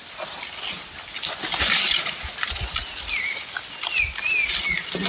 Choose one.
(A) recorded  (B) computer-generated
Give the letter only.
A